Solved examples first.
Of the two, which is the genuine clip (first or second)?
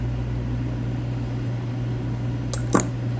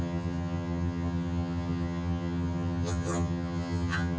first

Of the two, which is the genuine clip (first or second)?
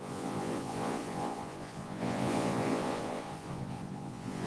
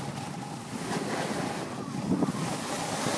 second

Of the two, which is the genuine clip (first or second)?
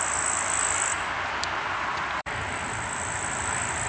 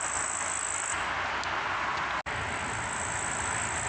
second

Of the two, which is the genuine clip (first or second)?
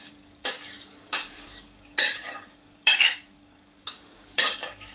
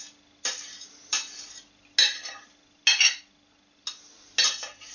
second